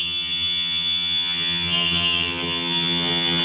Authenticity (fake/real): fake